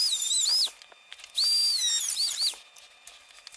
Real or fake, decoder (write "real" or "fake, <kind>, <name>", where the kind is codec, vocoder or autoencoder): real